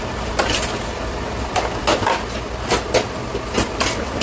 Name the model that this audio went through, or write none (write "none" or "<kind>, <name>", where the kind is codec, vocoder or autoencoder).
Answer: none